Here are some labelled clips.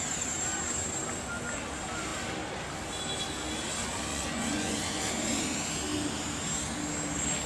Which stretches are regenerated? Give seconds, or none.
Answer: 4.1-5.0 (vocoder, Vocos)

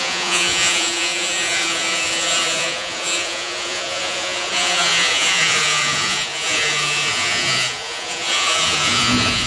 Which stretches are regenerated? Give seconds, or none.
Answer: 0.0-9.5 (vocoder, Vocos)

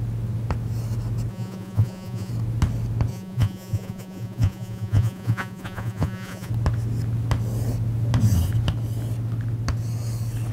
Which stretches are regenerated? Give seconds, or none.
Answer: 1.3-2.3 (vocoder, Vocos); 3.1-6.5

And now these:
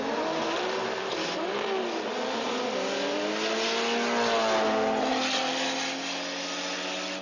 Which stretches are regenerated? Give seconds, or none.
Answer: none